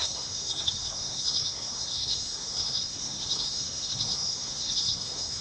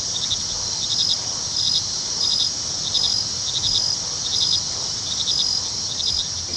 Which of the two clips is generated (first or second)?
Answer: first